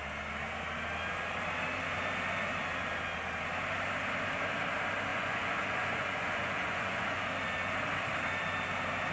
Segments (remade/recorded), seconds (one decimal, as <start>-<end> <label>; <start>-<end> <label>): 0.0-5.1 recorded; 5.1-7.2 remade; 7.2-9.1 recorded